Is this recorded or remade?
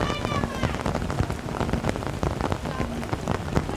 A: recorded